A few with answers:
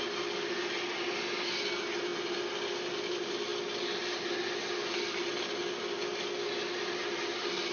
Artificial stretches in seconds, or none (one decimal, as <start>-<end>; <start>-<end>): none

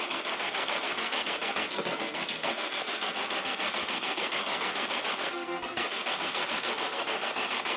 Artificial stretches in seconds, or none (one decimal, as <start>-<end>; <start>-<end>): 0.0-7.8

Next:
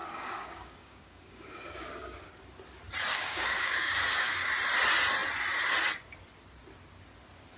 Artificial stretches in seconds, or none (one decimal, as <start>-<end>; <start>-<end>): 0.0-2.3; 3.1-4.5

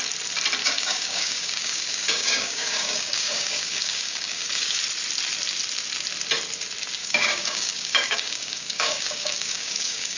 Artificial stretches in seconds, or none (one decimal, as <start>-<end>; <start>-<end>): 0.6-4.8; 7.0-10.2